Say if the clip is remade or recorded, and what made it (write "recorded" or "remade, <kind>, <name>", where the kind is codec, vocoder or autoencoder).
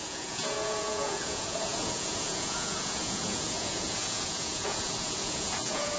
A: remade, vocoder, Vocos